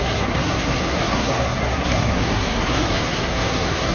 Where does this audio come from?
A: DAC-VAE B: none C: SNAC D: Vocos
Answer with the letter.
C